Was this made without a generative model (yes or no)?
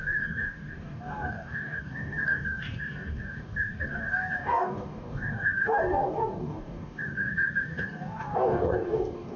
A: no